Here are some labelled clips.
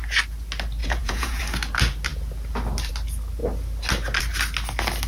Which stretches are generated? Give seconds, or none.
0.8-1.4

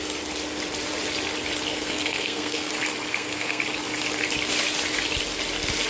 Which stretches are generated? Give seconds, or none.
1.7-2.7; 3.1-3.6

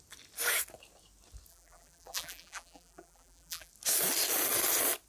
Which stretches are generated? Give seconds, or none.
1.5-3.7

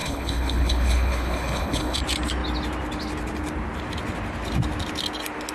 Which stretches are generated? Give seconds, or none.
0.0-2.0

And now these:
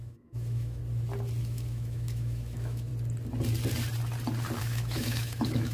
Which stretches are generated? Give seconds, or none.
0.0-0.8; 1.4-2.9; 4.6-5.7